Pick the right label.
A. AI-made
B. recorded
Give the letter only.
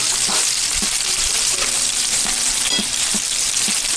A